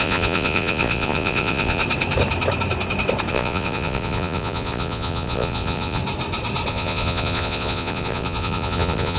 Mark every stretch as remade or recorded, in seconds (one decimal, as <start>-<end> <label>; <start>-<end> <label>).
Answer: 0.0-1.8 remade; 1.8-3.3 recorded; 3.3-6.0 remade; 6.0-6.7 recorded; 6.7-9.2 remade